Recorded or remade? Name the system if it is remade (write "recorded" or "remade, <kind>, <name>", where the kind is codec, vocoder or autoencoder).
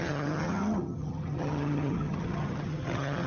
remade, vocoder, HiFi-GAN